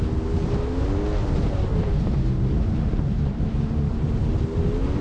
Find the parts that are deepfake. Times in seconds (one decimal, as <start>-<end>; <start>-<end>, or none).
1.2-4.2